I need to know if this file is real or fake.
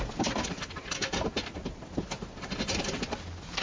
real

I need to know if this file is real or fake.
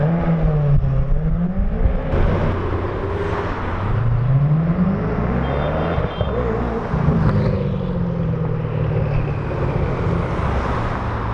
real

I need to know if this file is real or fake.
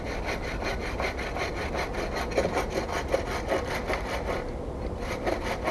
real